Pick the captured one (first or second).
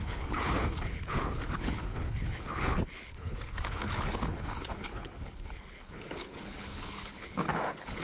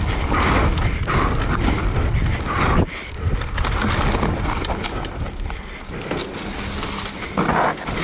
second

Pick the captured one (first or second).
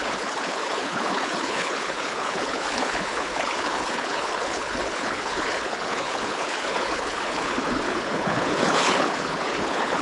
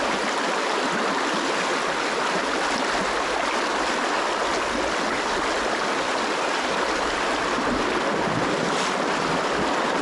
second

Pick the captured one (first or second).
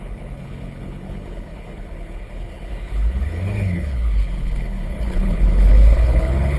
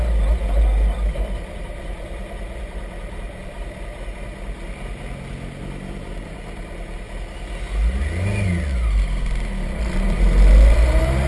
second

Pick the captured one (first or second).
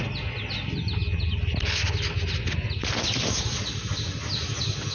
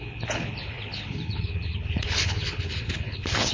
first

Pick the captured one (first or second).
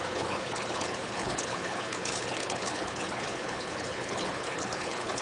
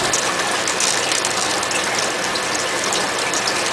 second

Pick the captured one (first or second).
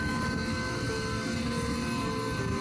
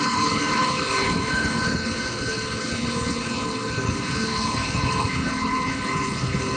first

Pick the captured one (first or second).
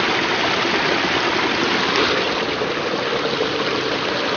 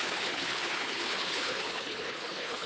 first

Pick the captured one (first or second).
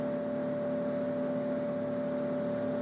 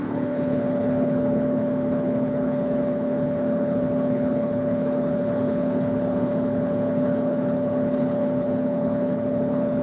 first